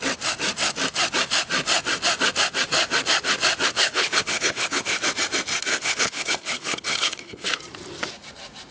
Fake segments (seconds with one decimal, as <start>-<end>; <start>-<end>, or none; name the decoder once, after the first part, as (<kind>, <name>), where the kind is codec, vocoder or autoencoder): 3.7-5.0 (codec, HILCodec); 5.7-7.6